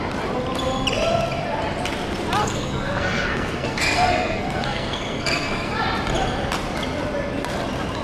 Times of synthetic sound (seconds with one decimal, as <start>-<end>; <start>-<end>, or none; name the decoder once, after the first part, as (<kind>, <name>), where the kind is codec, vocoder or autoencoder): 2.4-5.7 (codec, SNAC)